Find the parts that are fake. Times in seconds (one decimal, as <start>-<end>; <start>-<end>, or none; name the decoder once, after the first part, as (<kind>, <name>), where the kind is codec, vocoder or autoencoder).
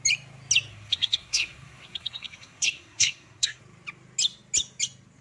0.7-3.6 (codec, SNAC)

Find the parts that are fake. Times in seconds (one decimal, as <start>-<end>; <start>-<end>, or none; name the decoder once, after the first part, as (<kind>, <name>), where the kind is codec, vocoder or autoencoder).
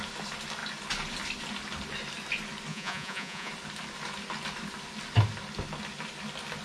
2.7-3.5 (vocoder, Vocos)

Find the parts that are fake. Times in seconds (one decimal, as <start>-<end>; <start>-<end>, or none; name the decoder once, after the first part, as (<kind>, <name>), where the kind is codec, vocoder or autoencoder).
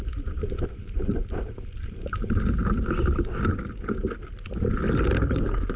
0.0-2.6 (vocoder, BigVGAN v2); 5.2-5.8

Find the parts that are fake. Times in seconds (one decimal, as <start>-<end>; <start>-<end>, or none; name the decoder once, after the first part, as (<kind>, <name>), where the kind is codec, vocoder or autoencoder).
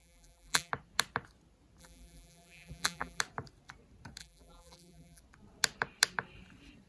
0.0-0.7 (vocoder, BigVGAN v2); 1.8-3.2; 4.2-5.2